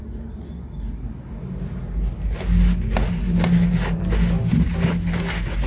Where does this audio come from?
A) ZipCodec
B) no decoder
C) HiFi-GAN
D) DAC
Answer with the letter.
B